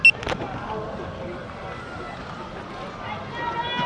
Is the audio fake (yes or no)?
no